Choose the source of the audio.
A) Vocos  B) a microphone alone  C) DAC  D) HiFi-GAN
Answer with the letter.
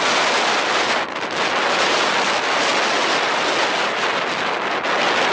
B